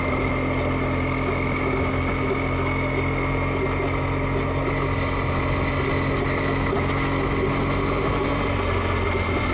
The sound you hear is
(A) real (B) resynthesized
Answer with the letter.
A